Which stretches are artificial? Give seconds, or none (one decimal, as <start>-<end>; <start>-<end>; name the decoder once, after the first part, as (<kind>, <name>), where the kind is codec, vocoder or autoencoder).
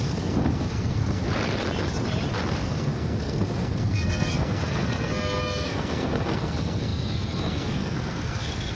0.0-1.2 (codec, SNAC); 2.5-8.7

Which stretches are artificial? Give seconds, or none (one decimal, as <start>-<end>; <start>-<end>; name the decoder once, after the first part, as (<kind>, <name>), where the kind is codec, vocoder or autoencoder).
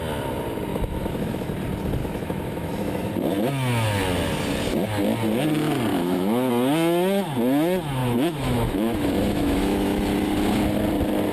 0.7-1.5 (autoencoder, DAC-VAE); 2.0-3.1; 5.9-6.5; 8.0-10.0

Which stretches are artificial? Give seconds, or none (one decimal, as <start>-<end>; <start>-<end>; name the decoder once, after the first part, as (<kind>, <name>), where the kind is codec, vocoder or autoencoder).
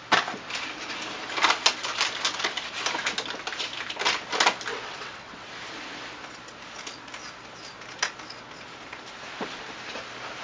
4.7-5.5 (vocoder, WaveNeXt)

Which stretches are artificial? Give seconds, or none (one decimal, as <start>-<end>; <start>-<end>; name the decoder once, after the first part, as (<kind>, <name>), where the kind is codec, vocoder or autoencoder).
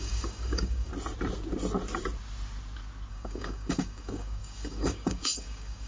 0.0-0.9 (codec, DAC); 3.1-5.9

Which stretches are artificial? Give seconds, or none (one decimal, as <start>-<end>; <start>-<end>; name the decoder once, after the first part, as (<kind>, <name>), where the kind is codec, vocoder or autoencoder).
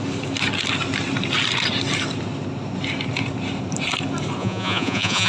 4.4-5.3 (vocoder, Vocos)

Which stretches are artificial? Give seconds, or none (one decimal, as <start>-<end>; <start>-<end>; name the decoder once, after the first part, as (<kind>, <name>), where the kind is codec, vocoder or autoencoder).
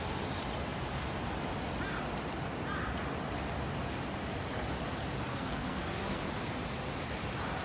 5.3-6.3 (codec, SNAC)